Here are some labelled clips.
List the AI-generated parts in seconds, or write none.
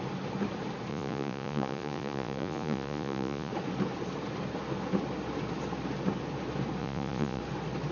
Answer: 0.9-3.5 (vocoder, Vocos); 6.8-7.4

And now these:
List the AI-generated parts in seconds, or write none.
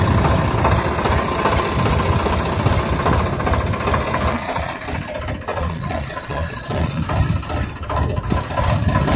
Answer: 4.3-4.8 (vocoder, Vocos); 5.5-7.0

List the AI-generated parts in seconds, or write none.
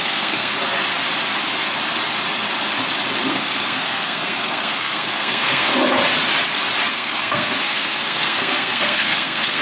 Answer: 0.0-0.5 (codec, SNAC); 3.3-5.7; 6.9-9.6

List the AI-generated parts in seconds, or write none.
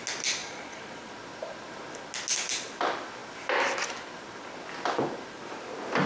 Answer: 0.4-1.1 (vocoder, Vocos)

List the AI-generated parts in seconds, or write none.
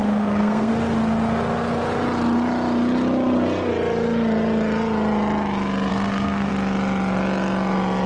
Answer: 0.0-0.7 (codec, SNAC); 5.9-6.5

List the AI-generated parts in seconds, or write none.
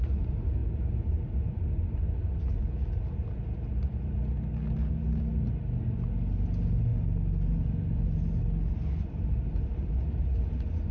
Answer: none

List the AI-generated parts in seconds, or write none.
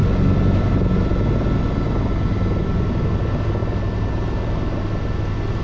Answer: none